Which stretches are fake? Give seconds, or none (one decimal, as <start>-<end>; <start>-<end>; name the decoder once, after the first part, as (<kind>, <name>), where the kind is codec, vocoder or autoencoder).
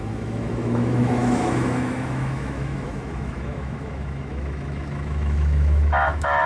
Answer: 0.0-6.5 (autoencoder, DAC-VAE)